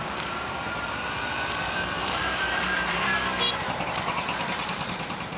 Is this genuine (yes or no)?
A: no